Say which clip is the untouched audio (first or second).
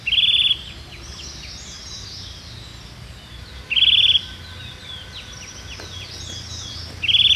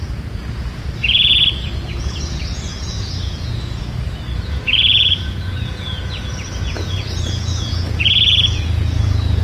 first